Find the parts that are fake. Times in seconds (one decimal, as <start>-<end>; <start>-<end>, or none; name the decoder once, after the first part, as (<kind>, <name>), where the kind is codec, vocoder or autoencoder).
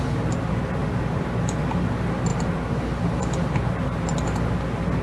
none